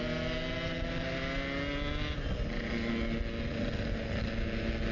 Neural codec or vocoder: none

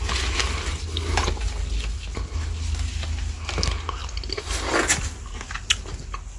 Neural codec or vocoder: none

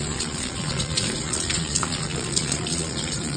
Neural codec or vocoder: vocoder, Vocos